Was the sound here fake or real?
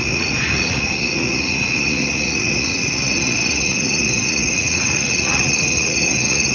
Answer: fake